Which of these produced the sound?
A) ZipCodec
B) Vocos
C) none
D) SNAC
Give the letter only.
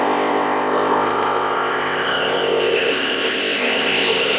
A